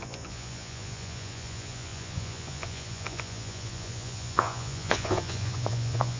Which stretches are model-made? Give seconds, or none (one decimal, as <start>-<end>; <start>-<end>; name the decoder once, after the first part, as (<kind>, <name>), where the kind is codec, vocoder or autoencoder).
0.0-6.2 (vocoder, Vocos)

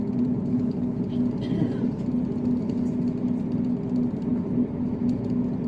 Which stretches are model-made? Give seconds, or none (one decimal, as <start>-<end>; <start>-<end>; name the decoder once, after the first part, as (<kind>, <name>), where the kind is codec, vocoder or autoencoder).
0.5-1.0 (codec, HILCodec)

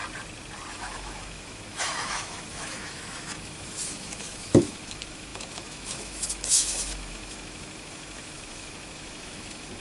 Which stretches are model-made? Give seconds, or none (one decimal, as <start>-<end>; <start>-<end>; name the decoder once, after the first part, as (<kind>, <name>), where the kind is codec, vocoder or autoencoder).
0.7-9.8 (autoencoder, DAC-VAE)

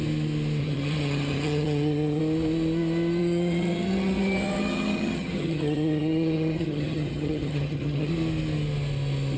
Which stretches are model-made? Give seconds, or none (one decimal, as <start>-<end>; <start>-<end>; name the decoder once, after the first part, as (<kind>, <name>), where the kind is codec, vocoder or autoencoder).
0.6-2.2 (vocoder, HiFi-GAN); 3.2-8.1

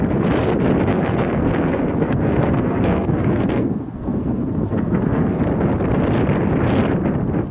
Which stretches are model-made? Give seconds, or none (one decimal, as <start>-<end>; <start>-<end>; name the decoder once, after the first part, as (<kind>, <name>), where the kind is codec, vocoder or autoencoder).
0.9-5.4 (codec, SNAC)

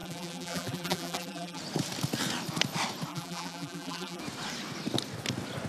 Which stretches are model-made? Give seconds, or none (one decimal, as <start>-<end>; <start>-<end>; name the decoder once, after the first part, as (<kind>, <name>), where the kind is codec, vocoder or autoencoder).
0.0-1.6 (vocoder, BigVGAN v2); 3.1-4.2